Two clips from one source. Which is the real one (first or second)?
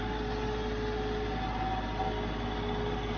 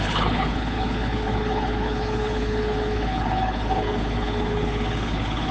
first